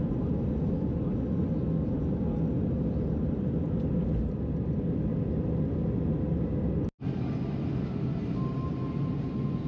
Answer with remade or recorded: recorded